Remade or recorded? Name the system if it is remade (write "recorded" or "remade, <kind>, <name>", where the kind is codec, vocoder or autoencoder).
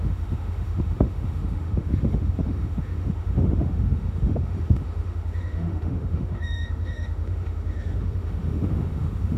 remade, autoencoder, DAC-VAE